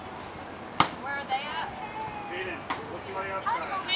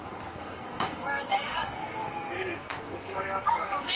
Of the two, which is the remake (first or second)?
second